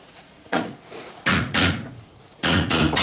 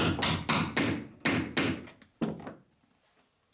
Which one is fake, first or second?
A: first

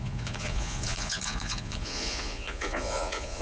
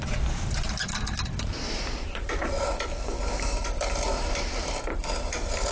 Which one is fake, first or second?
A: first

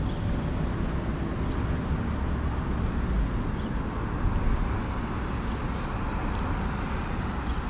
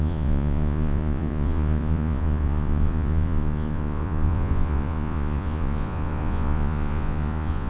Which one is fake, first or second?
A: second